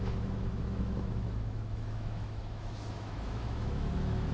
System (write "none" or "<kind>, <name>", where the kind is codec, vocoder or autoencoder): autoencoder, DAC-VAE